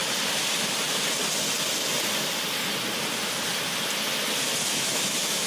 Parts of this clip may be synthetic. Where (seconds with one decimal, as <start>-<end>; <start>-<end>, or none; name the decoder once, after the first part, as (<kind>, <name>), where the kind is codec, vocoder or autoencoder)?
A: 4.6-5.5 (autoencoder, DAC-VAE)